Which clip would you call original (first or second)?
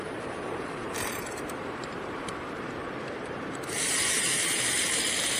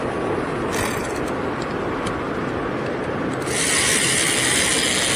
second